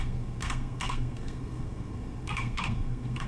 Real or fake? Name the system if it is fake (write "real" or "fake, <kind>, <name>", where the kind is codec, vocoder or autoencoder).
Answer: fake, codec, SNAC